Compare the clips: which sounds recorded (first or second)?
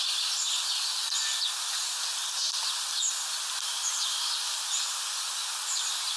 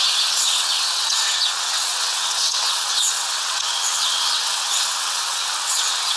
first